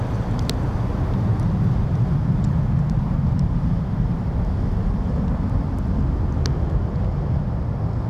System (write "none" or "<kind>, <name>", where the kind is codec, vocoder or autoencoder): none